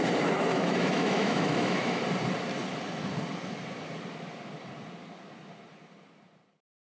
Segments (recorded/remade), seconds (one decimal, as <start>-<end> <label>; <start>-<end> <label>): 0.0-0.5 recorded; 0.5-2.0 remade; 2.0-6.8 recorded